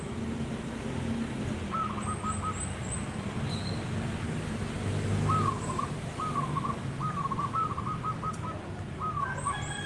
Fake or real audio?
real